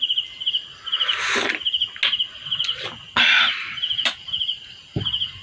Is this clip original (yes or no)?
yes